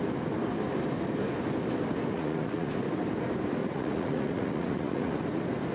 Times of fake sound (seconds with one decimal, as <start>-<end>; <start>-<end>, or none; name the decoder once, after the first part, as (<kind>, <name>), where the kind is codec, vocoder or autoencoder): 2.1-2.7 (vocoder, Vocos); 3.6-5.2